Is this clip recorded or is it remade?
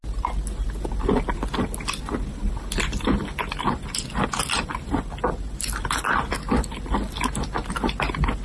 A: recorded